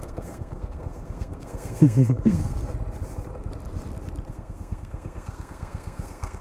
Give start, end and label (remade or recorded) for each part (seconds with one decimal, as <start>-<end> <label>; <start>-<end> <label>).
0.0-2.6 remade; 2.6-4.3 recorded; 4.3-6.4 remade